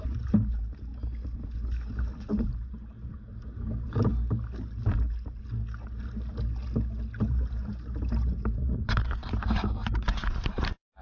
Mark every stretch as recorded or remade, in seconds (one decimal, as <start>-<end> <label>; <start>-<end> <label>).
0.0-0.9 remade; 0.9-2.4 recorded; 2.4-4.1 remade; 4.1-7.2 recorded; 7.2-11.0 remade